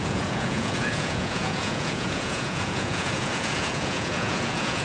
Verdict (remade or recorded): remade